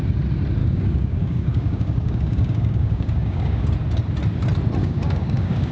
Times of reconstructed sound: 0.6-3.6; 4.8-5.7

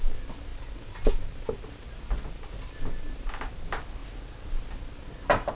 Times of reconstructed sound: none